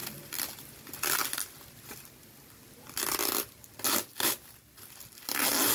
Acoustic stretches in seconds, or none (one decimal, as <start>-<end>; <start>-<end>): 0.0-5.7